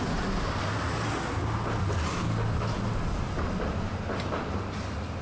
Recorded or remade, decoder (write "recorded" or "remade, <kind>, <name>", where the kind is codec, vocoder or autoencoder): recorded